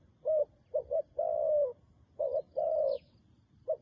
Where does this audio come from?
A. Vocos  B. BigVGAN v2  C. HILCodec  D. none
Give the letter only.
D